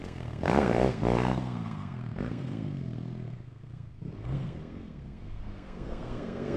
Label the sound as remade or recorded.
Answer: remade